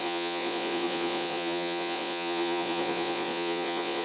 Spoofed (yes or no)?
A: yes